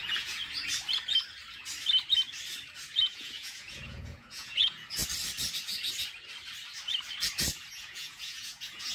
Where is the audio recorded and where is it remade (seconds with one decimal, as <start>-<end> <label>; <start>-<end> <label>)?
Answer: 0.0-0.4 remade; 0.4-3.0 recorded; 3.0-5.0 remade; 5.0-7.7 recorded; 7.7-8.9 remade